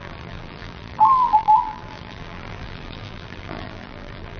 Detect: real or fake fake